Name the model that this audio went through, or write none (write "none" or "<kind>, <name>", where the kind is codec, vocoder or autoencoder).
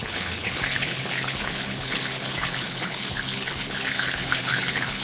codec, HILCodec